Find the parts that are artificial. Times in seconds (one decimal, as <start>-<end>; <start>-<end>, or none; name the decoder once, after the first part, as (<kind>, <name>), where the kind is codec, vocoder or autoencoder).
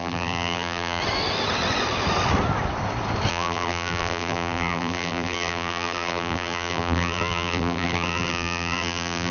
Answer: 0.0-1.0 (vocoder, BigVGAN v2); 3.3-9.3